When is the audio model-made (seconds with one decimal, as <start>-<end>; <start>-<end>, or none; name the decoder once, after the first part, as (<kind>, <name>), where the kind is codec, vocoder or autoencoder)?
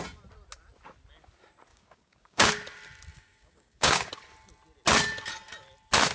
1.7-2.5 (codec, DAC); 3.1-4.1